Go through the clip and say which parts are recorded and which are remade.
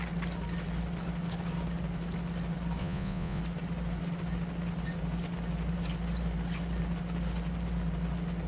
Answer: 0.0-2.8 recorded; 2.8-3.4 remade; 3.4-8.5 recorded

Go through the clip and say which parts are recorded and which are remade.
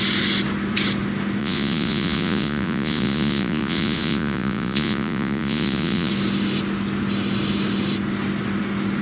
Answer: 0.0-1.4 recorded; 1.4-6.1 remade; 6.1-9.0 recorded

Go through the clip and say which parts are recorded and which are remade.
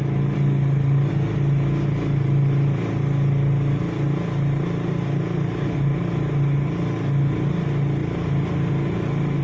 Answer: 0.0-9.4 recorded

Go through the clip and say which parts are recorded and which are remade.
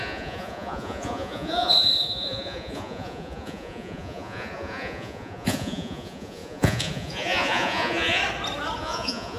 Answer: 0.0-8.2 remade; 8.2-8.8 recorded; 8.8-9.4 remade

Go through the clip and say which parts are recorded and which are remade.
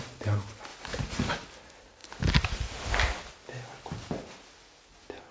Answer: 0.0-0.7 recorded; 0.7-1.3 remade; 1.3-5.3 recorded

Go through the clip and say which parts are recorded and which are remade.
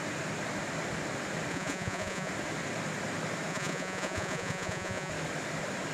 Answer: 0.0-1.5 recorded; 1.5-2.3 remade; 2.3-3.5 recorded; 3.5-5.1 remade; 5.1-5.9 recorded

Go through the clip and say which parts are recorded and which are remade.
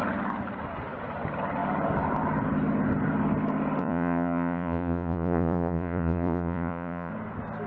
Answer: 0.0-3.8 recorded; 3.8-7.1 remade; 7.1-7.7 recorded